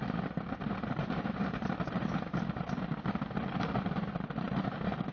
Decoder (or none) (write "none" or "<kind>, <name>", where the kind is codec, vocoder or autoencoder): vocoder, BigVGAN v2